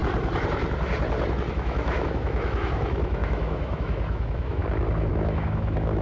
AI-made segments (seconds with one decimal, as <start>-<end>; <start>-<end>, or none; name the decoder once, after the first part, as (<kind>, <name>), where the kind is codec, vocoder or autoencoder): 1.5-4.6 (autoencoder, DAC-VAE); 5.1-6.0